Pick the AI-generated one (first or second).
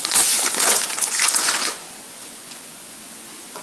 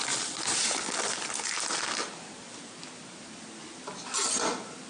first